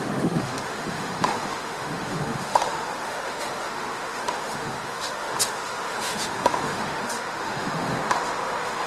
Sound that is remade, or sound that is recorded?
remade